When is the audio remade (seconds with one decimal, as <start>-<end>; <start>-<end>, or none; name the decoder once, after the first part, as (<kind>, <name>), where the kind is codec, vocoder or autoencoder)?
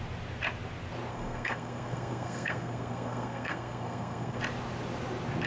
1.1-4.4 (codec, SNAC)